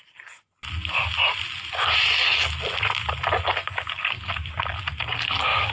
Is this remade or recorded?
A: recorded